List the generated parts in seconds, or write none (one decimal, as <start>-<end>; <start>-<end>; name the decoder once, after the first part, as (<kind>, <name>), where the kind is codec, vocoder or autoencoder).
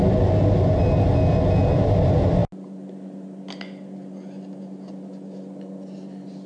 none